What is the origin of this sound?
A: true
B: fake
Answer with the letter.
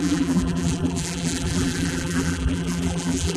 B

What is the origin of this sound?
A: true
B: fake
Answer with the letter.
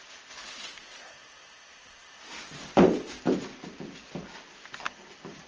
A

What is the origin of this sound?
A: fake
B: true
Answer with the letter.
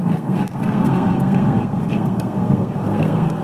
A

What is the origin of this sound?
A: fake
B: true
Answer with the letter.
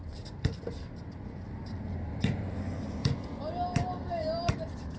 B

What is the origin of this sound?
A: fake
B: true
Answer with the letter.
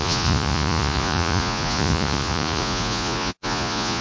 A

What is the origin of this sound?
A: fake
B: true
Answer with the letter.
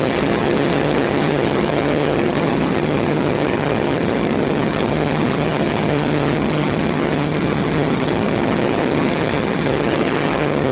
A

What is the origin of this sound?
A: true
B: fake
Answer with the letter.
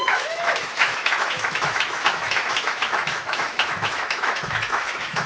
B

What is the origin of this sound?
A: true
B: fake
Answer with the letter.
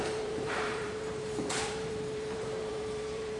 B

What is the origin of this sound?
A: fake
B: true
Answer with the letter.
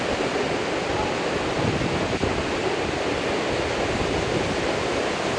B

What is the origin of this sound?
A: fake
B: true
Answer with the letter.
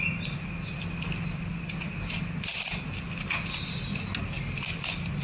B